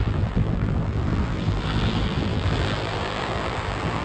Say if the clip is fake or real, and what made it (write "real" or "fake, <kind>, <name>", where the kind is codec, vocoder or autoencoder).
fake, vocoder, BigVGAN v2